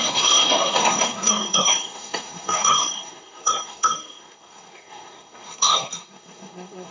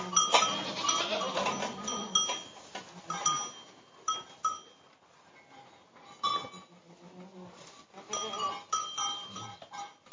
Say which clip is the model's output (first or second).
first